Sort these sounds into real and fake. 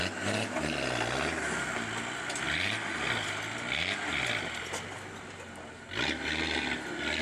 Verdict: real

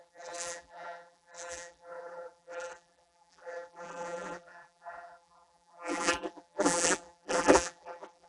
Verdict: fake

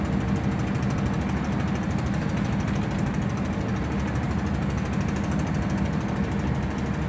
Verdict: real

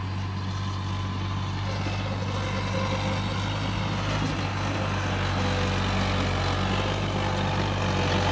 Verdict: real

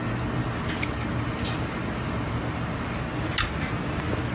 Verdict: real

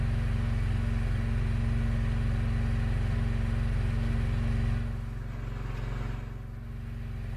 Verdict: real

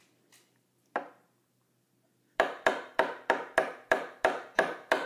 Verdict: fake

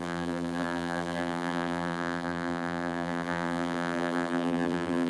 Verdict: fake